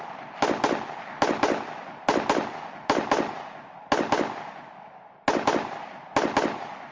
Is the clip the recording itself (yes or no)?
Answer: yes